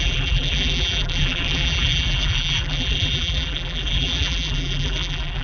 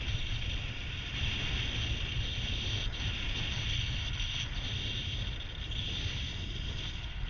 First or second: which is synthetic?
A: first